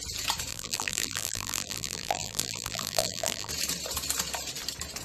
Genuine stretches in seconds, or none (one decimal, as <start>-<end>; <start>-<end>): 0.0-0.5; 3.5-5.0